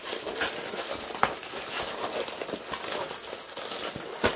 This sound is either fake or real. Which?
real